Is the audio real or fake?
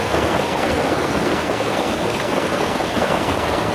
fake